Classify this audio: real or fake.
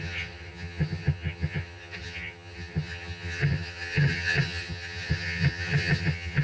fake